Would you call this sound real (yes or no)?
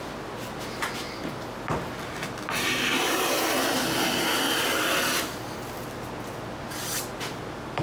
yes